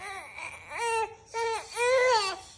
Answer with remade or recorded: recorded